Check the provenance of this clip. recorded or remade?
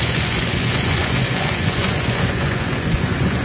remade